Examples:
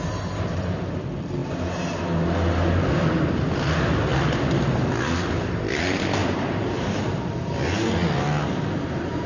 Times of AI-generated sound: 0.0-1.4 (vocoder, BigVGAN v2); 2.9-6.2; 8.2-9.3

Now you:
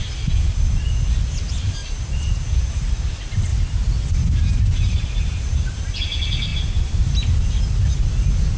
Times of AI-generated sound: 3.5-5.8 (vocoder, BigVGAN v2); 6.5-7.4

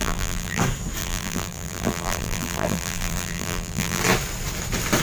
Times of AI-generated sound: 0.0-0.6 (vocoder, BigVGAN v2); 1.0-4.0

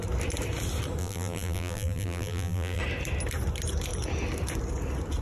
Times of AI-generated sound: 1.0-2.8 (vocoder, BigVGAN v2)

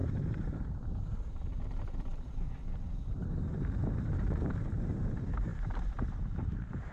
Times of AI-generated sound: 0.0-6.9 (vocoder, BigVGAN v2)

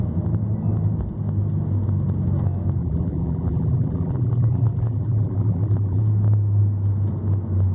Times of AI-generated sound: 2.8-6.0 (vocoder, BigVGAN v2)

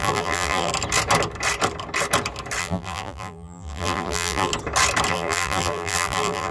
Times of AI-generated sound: 0.0-0.7 (vocoder, BigVGAN v2); 2.6-4.5; 5.1-6.5